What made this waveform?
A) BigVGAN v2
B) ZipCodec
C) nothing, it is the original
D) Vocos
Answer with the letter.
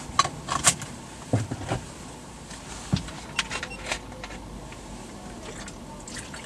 C